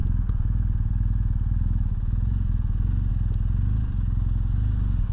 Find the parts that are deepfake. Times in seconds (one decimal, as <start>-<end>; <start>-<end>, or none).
0.0-3.1